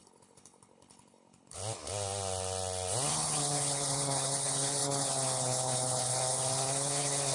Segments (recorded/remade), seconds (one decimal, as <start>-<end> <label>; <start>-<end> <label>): 0.0-1.6 remade; 1.6-3.1 recorded; 3.1-7.3 remade